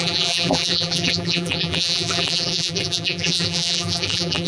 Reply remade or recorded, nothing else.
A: remade